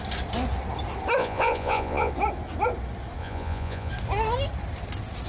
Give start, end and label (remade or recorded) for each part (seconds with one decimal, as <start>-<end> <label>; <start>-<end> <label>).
0.0-1.2 recorded; 1.2-2.1 remade; 2.1-3.2 recorded; 3.2-3.9 remade; 3.9-5.3 recorded